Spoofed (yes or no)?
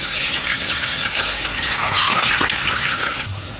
yes